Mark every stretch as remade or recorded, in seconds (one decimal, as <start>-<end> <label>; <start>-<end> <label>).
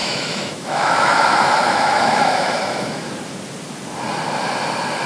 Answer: 0.0-3.1 remade; 3.1-5.1 recorded